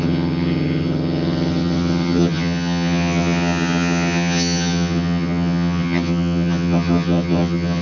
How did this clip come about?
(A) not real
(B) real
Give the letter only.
A